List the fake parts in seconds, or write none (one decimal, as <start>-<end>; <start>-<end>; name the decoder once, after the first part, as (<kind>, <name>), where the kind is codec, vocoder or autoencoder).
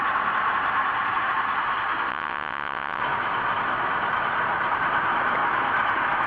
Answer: 2.1-3.0 (vocoder, WaveNeXt)